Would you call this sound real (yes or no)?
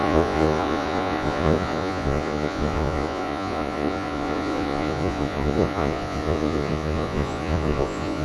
no